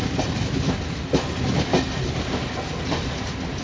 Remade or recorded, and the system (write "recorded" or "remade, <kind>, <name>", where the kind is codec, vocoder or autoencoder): recorded